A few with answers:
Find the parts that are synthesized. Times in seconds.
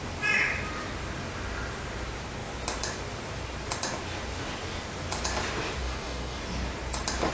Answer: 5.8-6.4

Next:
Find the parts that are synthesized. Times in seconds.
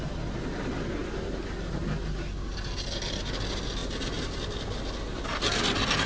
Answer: none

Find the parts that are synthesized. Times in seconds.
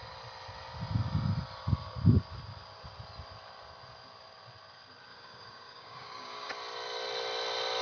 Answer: 5.1-6.5